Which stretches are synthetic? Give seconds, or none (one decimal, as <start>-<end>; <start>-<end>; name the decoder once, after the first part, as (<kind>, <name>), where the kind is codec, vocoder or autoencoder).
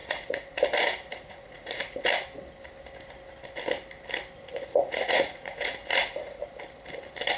0.0-0.6 (vocoder, Vocos); 1.1-2.0; 4.5-6.4